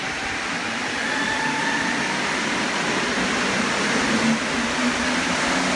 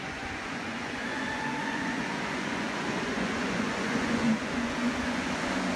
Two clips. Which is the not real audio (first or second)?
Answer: second